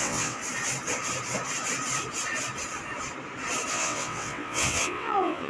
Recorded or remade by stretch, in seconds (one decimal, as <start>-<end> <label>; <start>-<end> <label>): 0.0-0.4 remade; 0.4-3.7 recorded; 3.7-5.5 remade